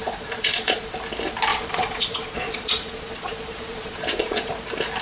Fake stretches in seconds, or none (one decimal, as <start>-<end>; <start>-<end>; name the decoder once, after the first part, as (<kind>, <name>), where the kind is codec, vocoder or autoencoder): 0.0-0.9 (vocoder, Vocos); 1.5-4.5